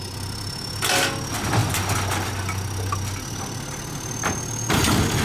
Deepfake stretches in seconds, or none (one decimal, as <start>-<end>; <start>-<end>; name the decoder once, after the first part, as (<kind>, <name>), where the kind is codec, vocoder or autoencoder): none